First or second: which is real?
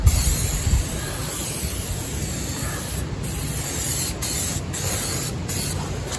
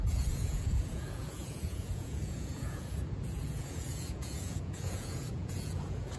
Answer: first